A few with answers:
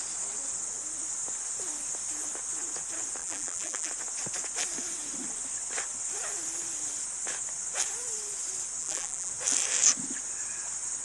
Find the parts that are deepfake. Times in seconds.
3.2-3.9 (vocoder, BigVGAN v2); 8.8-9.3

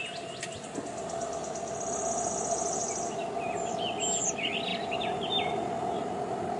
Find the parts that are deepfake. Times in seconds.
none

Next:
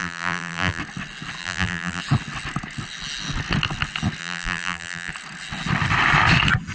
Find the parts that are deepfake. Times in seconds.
0.0-0.8 (vocoder, BigVGAN v2); 1.4-2.0; 4.2-5.1

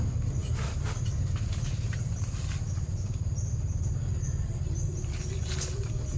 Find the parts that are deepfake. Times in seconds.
none